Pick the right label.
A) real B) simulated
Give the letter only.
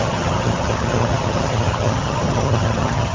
B